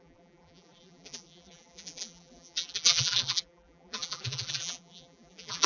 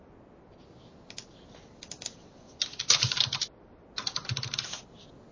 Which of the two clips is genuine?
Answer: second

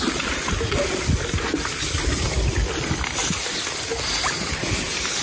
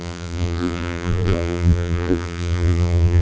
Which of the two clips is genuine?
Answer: first